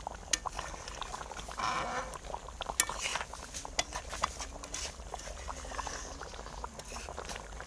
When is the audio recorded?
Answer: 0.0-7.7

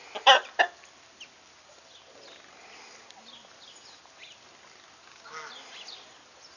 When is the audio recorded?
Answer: 0.0-6.6

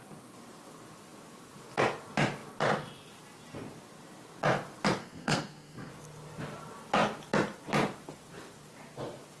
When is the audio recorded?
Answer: 0.0-5.0; 5.9-9.4

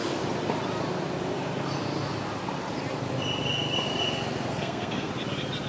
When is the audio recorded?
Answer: 0.0-4.5; 5.1-5.7

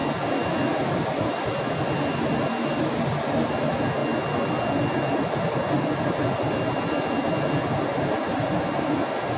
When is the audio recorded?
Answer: 0.0-9.4

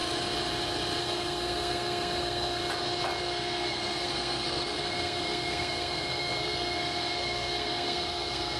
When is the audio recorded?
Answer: 0.0-1.0; 2.6-3.2

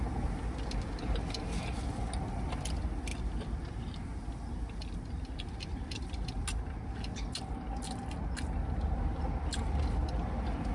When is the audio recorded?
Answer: 0.0-10.7

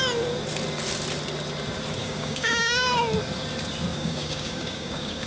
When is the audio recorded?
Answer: 0.0-2.0; 3.0-3.9